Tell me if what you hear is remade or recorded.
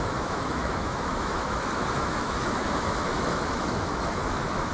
remade